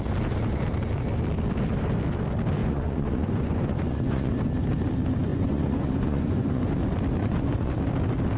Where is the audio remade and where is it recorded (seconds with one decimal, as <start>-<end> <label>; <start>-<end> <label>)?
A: 0.0-2.6 recorded; 2.6-4.3 remade; 4.3-5.3 recorded; 5.3-6.6 remade; 6.6-7.2 recorded; 7.2-7.8 remade; 7.8-8.4 recorded